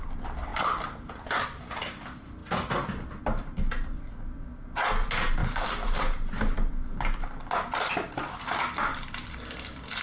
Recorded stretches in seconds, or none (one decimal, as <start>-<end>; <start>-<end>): 0.0-10.0